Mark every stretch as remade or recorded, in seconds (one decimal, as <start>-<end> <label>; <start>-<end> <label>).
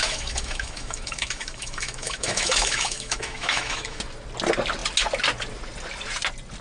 0.0-4.0 remade; 4.0-6.6 recorded